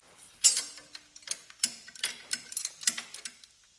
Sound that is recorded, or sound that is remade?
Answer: recorded